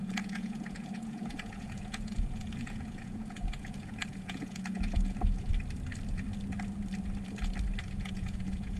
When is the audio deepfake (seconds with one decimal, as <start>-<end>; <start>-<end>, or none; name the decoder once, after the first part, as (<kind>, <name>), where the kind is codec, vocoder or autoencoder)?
0.0-5.5 (vocoder, Vocos); 7.8-8.8